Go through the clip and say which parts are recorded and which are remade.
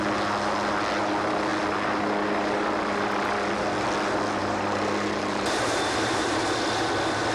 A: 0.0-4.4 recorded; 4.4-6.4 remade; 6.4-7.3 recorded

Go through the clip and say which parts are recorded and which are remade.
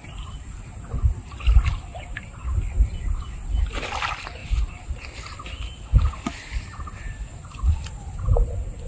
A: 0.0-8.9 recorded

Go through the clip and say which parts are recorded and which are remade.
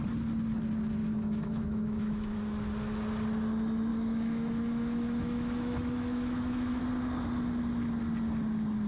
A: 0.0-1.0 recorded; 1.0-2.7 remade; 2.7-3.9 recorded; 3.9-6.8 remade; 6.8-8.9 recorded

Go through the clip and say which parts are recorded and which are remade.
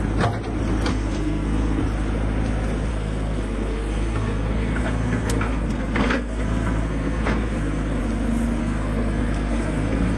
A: 0.0-0.9 recorded; 0.9-1.8 remade; 1.8-2.9 recorded; 2.9-8.0 remade; 8.0-8.6 recorded; 8.6-10.2 remade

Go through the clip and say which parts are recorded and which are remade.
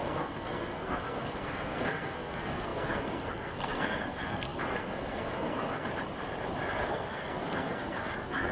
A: 0.0-5.9 remade; 5.9-6.7 recorded; 6.7-8.5 remade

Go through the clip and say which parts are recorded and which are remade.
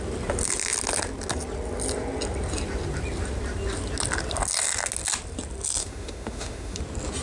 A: 0.0-5.8 recorded; 5.8-6.8 remade; 6.8-7.2 recorded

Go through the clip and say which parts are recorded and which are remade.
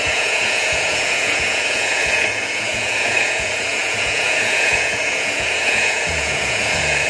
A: 0.0-7.1 remade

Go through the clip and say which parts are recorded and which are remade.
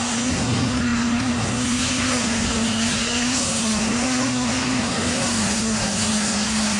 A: 0.0-6.8 remade